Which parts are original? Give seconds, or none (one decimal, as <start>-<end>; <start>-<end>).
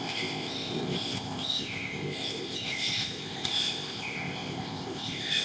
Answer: none